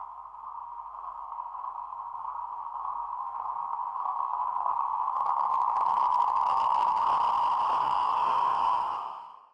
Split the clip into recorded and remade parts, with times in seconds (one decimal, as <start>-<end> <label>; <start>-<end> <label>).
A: 0.0-7.1 remade; 7.1-7.8 recorded; 7.8-9.5 remade